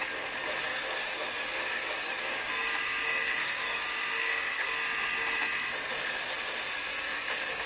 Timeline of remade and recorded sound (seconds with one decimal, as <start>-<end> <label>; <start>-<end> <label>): 0.0-0.7 recorded; 0.7-4.7 remade; 4.7-7.1 recorded; 7.1-7.7 remade